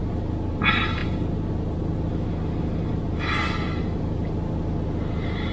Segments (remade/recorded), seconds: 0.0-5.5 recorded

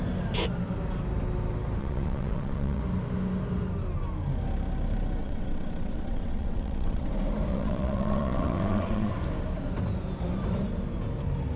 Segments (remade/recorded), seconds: 0.0-1.8 recorded; 1.8-2.8 remade; 2.8-5.2 recorded; 5.2-7.1 remade; 7.1-7.5 recorded; 7.5-9.1 remade; 9.1-11.6 recorded